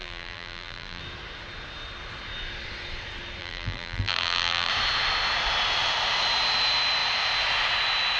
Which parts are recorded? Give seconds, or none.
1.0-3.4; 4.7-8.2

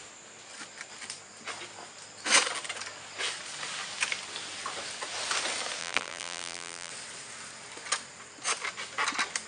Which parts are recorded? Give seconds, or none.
0.0-5.8; 6.9-9.5